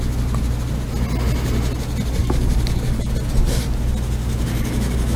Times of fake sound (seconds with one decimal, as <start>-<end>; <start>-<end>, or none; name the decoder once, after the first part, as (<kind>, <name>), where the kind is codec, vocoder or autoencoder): 2.2-3.1 (codec, DAC); 4.2-5.2